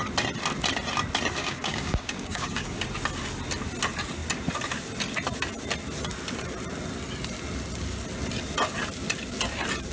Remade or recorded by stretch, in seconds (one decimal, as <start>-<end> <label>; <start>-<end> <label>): 0.0-1.4 recorded; 1.4-2.8 remade; 2.8-9.9 recorded